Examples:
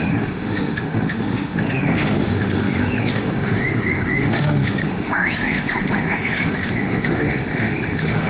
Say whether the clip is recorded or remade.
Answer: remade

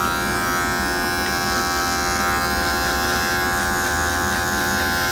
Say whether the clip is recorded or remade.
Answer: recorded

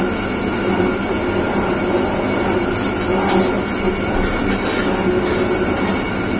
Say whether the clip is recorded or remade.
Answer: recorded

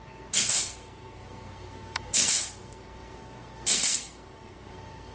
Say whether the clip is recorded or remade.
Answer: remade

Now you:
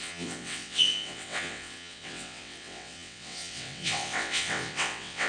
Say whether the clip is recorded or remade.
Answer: remade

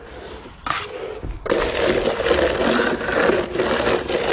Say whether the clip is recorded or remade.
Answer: recorded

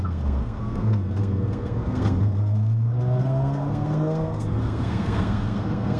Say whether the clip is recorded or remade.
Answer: remade